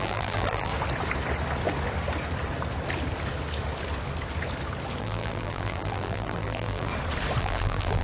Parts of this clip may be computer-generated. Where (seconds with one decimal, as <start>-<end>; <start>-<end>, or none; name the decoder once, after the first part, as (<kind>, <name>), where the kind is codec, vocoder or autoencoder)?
0.0-0.7 (vocoder, BigVGAN v2); 5.0-6.9; 7.4-8.0